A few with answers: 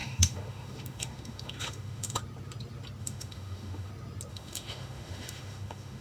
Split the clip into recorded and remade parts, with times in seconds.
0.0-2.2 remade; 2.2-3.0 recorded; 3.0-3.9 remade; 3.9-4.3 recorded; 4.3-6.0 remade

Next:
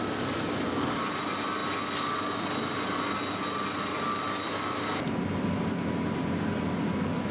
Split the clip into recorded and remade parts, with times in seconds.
0.0-7.3 recorded

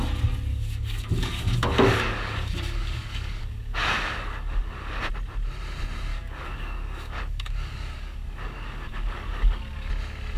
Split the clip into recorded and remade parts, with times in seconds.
0.0-0.5 recorded; 0.5-5.0 remade; 5.0-6.1 recorded; 6.1-9.9 remade; 9.9-10.4 recorded

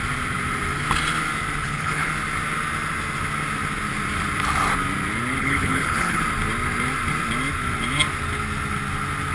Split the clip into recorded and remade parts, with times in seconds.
0.0-1.6 recorded; 1.6-2.1 remade; 2.1-5.4 recorded; 5.4-6.2 remade; 6.2-9.3 recorded

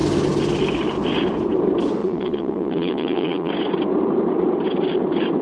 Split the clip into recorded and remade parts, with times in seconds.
0.0-2.0 recorded; 2.0-3.5 remade; 3.5-5.4 recorded